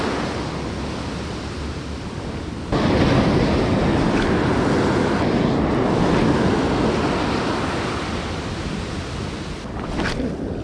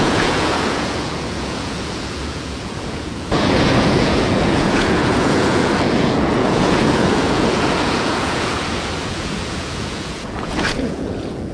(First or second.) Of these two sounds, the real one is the first